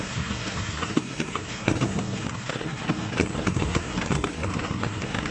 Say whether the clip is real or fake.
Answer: fake